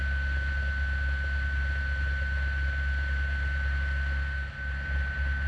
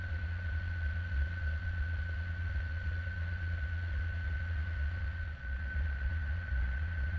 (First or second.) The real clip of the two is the first